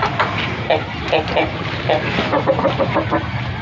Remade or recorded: recorded